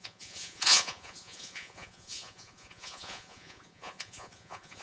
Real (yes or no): no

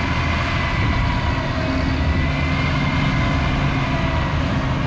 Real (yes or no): yes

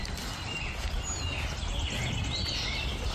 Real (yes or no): yes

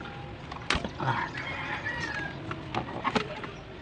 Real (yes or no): yes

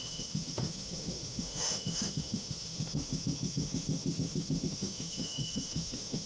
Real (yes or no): no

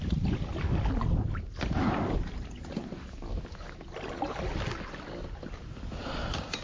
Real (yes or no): yes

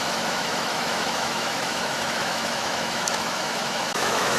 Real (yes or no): no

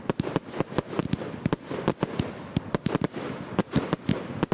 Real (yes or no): yes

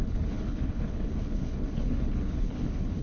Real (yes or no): no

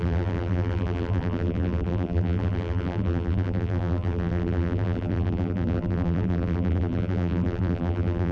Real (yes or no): no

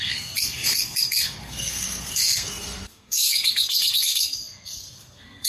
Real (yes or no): no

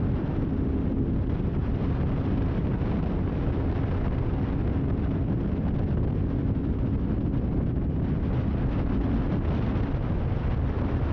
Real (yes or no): yes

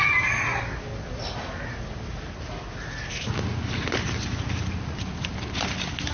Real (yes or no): yes